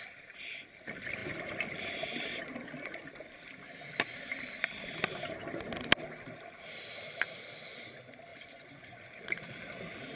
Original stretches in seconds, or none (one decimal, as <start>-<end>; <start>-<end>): 0.0-8.3; 9.2-10.2